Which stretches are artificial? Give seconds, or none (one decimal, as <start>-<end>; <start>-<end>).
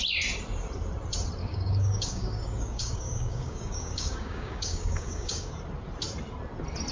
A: 1.4-5.5